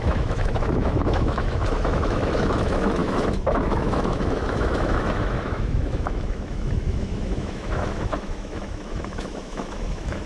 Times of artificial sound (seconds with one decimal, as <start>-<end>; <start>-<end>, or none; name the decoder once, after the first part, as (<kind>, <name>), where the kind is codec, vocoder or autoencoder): 0.0-10.3 (autoencoder, DAC-VAE)